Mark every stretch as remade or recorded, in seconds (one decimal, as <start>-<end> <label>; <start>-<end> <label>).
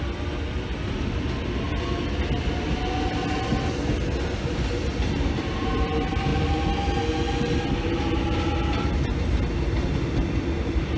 0.0-11.0 recorded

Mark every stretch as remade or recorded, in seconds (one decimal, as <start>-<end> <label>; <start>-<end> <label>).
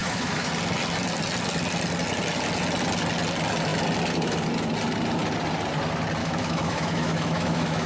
0.0-0.5 remade; 0.5-6.2 recorded; 6.2-7.9 remade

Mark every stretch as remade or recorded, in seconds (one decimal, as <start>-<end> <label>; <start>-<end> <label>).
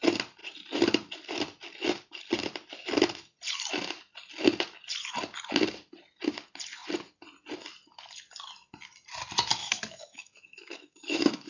0.0-9.6 recorded; 9.6-11.5 remade